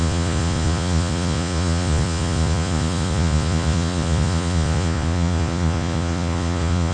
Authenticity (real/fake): fake